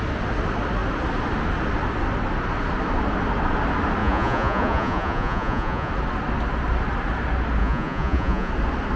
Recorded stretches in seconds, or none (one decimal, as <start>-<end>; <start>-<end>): 0.0-4.0; 5.9-7.6; 8.5-9.0